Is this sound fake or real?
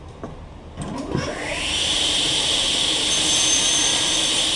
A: fake